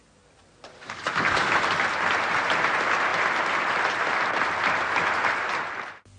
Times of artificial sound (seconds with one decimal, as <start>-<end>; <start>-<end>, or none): 0.7-1.5